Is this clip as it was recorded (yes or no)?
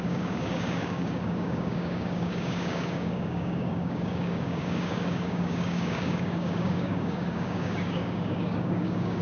no